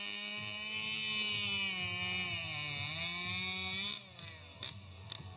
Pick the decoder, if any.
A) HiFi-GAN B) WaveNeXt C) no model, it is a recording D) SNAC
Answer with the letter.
C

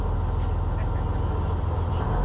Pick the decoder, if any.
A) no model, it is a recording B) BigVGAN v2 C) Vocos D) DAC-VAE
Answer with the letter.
A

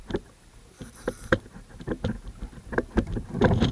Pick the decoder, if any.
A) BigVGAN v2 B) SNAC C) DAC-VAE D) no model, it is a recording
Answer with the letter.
A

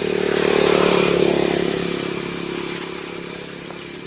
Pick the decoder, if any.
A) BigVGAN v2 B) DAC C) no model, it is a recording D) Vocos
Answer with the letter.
C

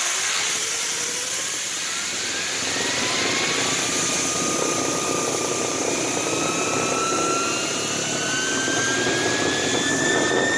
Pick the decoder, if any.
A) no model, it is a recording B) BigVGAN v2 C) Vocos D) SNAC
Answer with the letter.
A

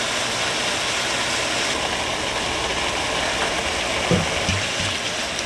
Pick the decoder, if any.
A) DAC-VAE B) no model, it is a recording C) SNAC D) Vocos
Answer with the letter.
B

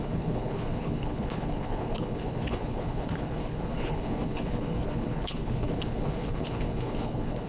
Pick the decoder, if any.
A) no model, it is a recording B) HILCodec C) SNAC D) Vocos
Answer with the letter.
B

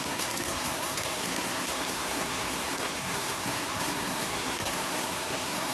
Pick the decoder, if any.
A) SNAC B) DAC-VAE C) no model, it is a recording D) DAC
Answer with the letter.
A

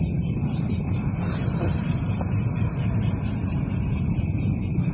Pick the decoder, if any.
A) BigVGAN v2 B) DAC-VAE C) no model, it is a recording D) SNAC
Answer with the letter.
A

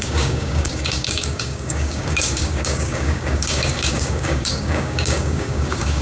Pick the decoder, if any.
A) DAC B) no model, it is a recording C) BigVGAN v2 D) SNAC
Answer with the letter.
A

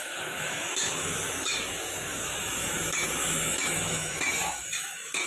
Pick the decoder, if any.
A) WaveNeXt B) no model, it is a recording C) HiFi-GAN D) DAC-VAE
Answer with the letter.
D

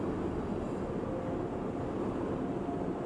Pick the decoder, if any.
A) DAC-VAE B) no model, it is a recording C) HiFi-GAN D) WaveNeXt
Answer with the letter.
B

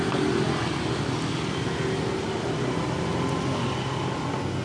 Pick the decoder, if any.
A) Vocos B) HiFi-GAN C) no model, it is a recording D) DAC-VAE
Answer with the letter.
C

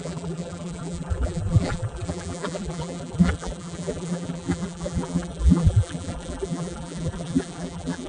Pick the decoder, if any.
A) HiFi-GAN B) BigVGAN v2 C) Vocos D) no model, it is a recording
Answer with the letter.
B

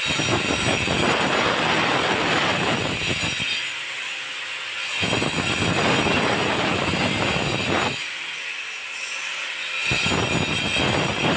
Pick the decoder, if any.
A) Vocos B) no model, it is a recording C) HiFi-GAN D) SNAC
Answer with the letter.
B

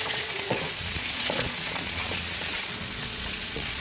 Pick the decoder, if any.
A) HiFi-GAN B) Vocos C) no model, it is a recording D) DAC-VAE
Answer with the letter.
B